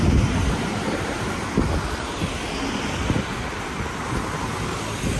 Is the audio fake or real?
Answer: real